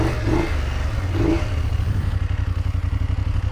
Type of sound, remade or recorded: recorded